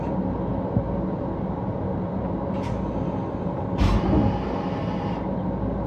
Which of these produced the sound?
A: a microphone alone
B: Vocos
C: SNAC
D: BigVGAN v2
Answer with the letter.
A